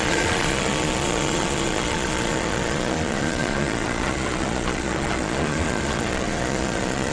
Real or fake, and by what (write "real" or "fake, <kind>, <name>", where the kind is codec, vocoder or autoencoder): fake, vocoder, Vocos